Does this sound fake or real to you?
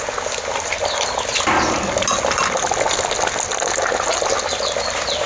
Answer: real